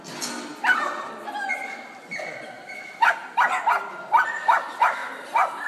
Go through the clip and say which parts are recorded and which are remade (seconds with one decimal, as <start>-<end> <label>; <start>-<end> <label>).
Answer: 0.0-5.7 recorded